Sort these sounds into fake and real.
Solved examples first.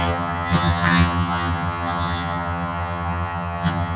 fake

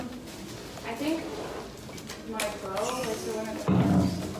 real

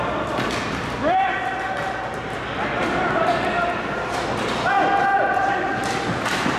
fake